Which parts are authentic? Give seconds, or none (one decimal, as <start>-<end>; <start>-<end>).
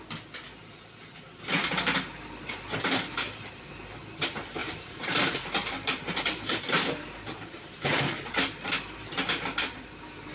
0.0-4.6; 7.7-10.3